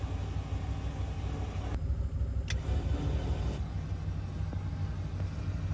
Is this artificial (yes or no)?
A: no